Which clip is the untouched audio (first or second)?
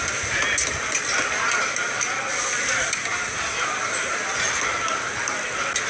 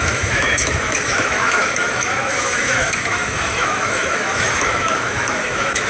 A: first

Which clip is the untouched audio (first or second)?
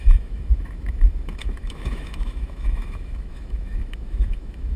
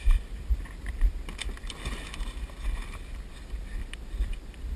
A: second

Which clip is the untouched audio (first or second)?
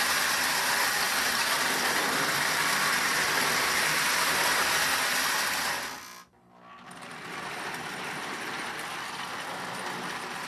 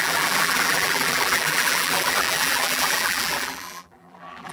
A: first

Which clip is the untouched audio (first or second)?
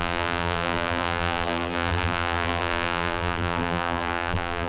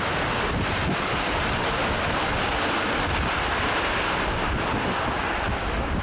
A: second